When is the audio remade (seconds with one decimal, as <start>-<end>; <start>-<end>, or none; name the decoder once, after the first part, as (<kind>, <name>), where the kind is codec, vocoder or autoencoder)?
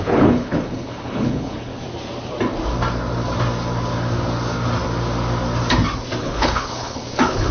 0.0-1.7 (codec, HILCodec); 6.2-7.5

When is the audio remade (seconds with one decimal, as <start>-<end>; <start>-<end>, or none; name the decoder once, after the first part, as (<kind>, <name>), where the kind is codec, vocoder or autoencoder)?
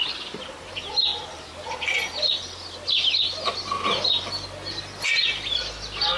none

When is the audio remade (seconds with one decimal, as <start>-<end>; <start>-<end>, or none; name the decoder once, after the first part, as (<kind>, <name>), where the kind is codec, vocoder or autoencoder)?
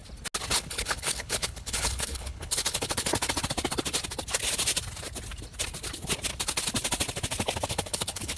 0.6-3.1 (codec, HILCodec); 7.7-8.4